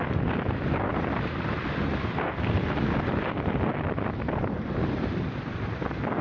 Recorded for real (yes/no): yes